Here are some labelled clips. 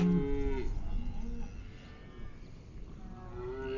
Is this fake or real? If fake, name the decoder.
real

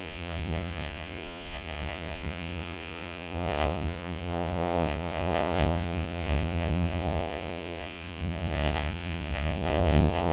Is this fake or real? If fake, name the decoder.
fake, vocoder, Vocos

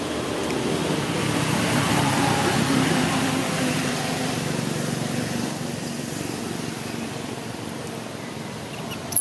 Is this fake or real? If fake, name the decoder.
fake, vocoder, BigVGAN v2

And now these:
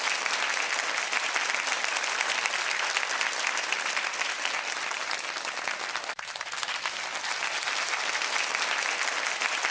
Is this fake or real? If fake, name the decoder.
real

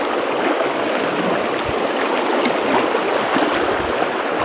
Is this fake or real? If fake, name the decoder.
real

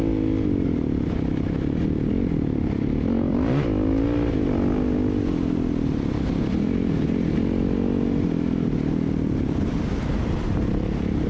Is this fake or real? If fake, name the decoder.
real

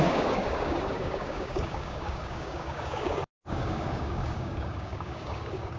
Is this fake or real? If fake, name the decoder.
fake, codec, DAC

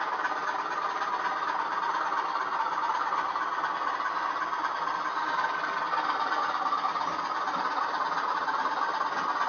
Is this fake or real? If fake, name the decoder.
real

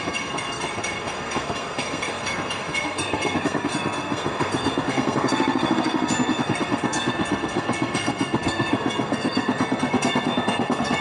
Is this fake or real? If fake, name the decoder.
fake, codec, SNAC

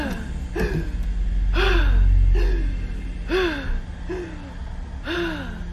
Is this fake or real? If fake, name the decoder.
real